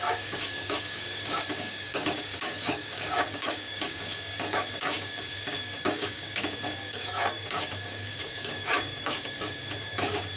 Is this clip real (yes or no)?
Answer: no